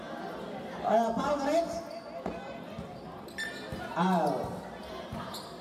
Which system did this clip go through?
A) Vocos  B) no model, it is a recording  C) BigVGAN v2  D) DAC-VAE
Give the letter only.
B